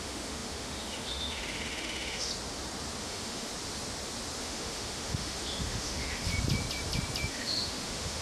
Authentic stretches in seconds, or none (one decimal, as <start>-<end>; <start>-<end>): 2.3-3.0; 3.5-4.4; 6.3-7.3